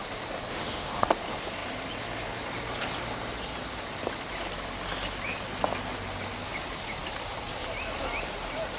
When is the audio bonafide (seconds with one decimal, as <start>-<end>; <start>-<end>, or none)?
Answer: 0.0-0.5; 1.1-8.8